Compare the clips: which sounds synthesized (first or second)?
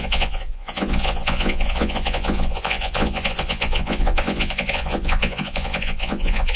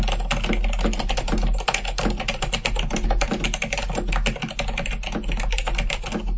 first